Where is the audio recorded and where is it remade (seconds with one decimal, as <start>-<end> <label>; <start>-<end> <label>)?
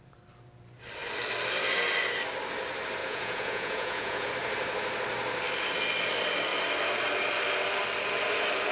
0.0-3.0 recorded; 3.0-4.3 remade; 4.3-8.7 recorded